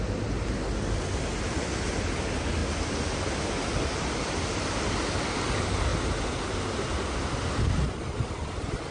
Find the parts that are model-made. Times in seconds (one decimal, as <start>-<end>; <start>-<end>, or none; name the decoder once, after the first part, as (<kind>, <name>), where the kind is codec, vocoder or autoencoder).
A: none